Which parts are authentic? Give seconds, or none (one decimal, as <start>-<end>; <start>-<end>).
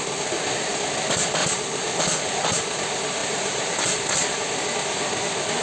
0.0-1.4; 2.6-3.2; 4.0-5.6